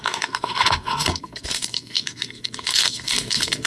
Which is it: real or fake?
fake